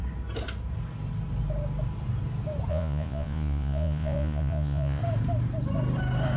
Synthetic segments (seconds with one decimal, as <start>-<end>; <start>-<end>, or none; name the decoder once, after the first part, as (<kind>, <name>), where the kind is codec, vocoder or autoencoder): 2.7-5.0 (vocoder, Vocos)